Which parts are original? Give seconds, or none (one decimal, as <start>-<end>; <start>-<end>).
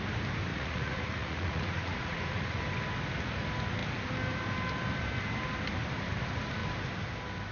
0.0-0.5; 2.6-7.5